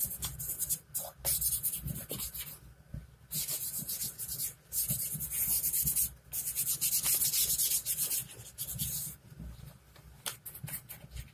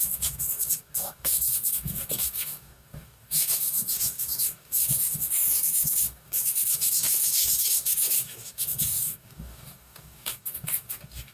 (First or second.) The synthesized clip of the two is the second